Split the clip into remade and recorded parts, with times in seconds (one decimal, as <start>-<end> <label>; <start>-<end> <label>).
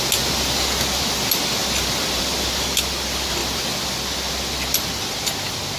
0.0-5.8 recorded